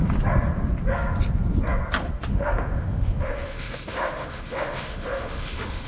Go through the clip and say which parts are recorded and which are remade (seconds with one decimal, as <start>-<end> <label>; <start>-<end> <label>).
0.0-2.3 recorded; 2.3-5.9 remade